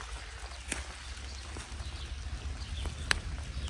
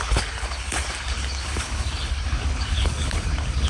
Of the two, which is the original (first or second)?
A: first